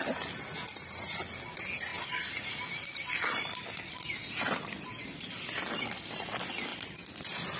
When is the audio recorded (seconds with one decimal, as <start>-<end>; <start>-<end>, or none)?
0.0-7.6